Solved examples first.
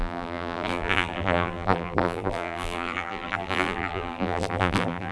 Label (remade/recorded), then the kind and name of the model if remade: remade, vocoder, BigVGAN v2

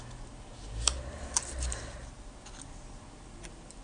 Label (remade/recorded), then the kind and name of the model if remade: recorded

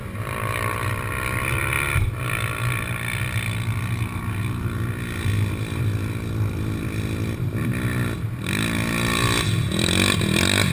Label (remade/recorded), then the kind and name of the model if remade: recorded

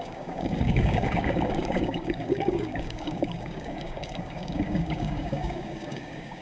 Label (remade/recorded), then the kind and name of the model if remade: remade, codec, DAC